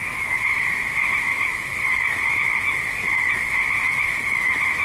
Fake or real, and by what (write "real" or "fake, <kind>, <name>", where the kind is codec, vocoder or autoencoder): fake, autoencoder, DAC-VAE